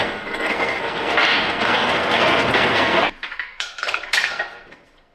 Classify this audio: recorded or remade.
remade